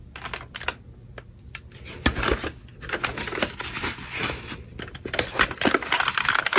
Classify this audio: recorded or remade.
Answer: recorded